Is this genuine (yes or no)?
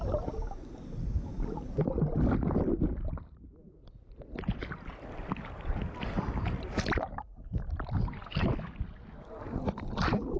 yes